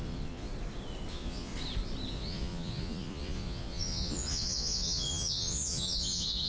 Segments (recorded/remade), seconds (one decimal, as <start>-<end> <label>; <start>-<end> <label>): 0.0-0.5 remade; 0.5-1.1 recorded; 1.1-1.5 remade; 1.5-2.1 recorded; 2.1-6.5 remade